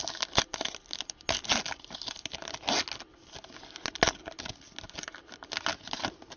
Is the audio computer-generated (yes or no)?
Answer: no